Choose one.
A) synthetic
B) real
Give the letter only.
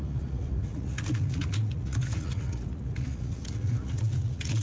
A